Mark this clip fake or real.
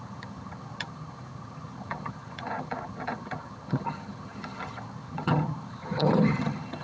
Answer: fake